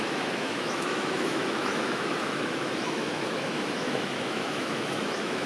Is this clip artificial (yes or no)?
yes